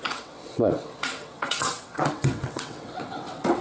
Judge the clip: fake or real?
fake